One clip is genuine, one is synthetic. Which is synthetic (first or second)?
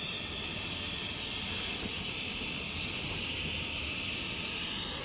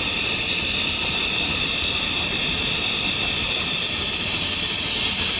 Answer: second